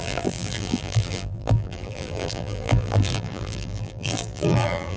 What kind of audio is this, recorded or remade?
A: remade